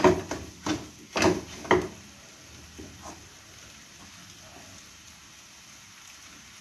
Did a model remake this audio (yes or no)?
no